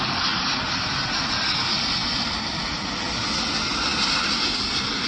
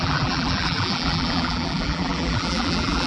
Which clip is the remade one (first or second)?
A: second